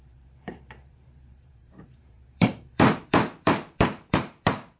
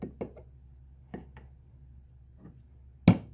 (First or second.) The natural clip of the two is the second